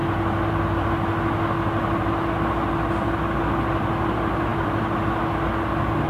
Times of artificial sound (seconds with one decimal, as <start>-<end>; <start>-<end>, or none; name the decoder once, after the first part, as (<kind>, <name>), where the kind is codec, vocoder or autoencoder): none